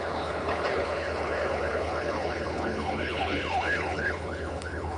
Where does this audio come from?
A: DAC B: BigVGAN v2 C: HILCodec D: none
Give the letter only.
C